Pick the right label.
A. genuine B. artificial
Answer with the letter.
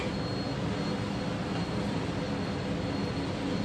A